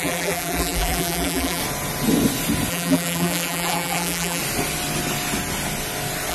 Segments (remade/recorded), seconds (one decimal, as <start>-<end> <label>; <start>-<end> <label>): 0.0-1.6 remade; 1.6-2.7 recorded; 2.7-4.4 remade; 4.4-6.3 recorded